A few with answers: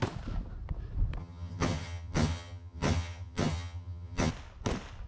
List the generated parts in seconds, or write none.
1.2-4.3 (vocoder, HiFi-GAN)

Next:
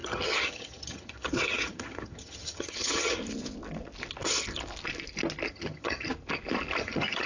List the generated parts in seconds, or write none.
0.0-3.2 (vocoder, HiFi-GAN); 5.5-6.1; 6.8-7.3